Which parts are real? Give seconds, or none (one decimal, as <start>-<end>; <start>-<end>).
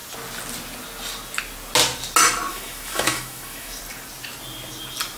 0.0-2.5; 3.8-5.2